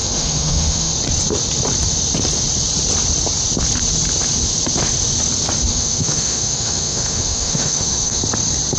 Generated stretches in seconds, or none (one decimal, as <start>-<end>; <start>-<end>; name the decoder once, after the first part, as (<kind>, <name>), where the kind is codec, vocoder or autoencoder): 0.0-0.9 (autoencoder, DAC-VAE); 5.7-8.2